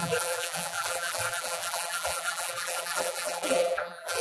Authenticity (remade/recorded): remade